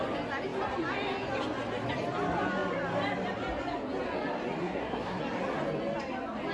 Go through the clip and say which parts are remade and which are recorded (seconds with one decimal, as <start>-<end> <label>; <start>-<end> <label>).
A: 0.0-4.6 recorded; 4.6-5.2 remade; 5.2-6.5 recorded